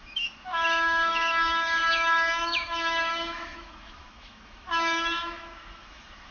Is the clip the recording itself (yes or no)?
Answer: no